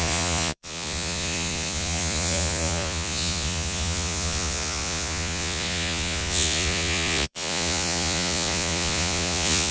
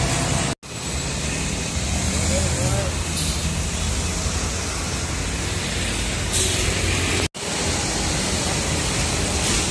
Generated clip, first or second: first